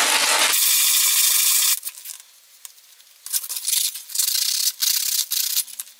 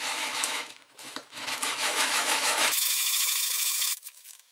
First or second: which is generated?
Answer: second